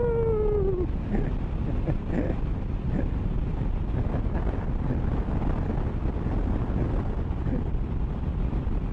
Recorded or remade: recorded